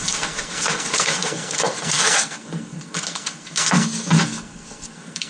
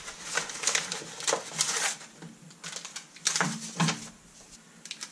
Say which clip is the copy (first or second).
first